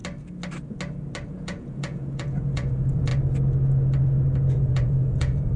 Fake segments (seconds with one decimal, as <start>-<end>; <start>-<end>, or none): 1.3-3.1; 4.5-5.6